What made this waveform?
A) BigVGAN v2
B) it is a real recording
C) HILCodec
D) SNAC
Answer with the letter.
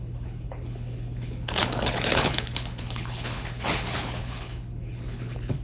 C